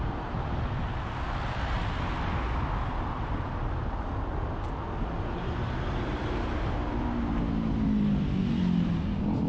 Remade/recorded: recorded